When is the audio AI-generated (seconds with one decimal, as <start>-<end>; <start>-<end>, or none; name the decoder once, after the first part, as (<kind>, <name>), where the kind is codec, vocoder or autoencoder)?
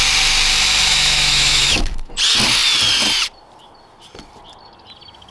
0.9-2.1 (autoencoder, DAC-VAE)